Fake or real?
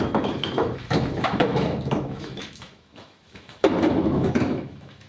fake